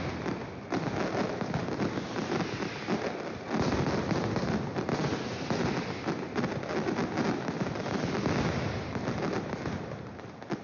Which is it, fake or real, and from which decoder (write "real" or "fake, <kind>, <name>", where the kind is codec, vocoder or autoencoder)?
real